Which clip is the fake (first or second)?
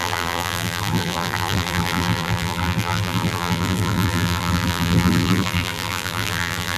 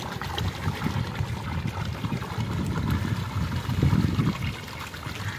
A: first